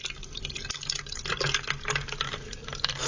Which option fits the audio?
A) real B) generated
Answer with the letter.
A